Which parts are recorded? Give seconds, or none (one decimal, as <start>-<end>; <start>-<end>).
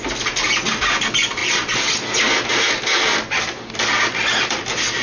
0.0-5.0